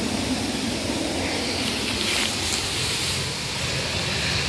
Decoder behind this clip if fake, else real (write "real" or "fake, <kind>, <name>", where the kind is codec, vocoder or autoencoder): real